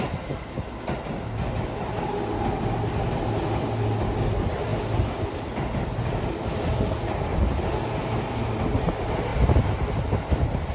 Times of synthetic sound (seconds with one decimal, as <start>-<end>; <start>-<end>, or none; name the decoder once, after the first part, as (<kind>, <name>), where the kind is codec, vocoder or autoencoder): none